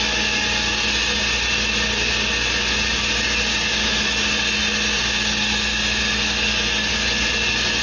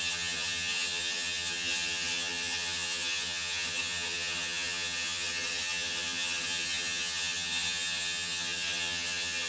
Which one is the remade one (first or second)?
second